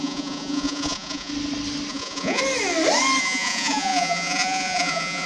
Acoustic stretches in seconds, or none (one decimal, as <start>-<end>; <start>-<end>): 1.3-1.9; 2.4-3.2